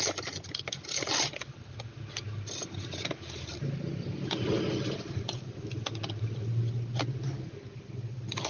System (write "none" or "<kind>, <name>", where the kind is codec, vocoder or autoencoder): none